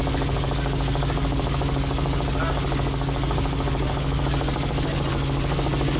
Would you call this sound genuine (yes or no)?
no